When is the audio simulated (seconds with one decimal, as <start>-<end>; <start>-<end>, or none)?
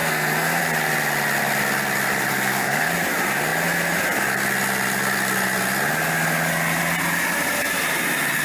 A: 0.0-0.6; 2.3-2.9